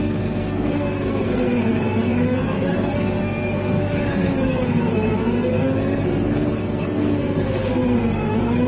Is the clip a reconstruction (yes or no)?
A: yes